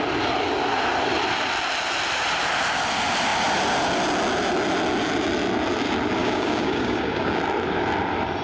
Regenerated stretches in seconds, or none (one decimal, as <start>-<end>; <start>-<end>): 6.2-7.4